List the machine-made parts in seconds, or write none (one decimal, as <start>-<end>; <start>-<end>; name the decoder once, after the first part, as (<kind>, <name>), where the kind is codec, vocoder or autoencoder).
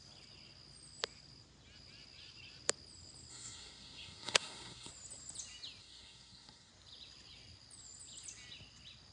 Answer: 3.3-4.9 (codec, SNAC); 5.8-6.7